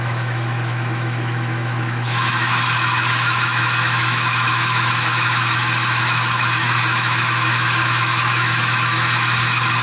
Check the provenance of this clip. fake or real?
fake